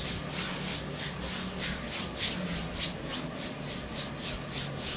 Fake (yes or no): no